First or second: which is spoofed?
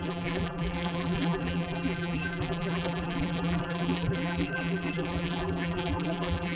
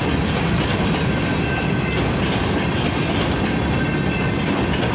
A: first